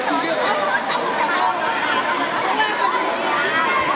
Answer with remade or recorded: recorded